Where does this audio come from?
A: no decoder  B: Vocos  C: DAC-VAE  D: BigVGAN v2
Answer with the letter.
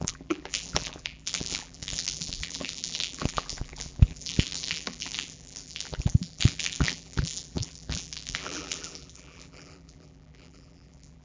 D